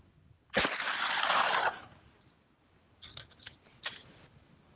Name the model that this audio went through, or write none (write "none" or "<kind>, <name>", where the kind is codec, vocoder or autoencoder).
none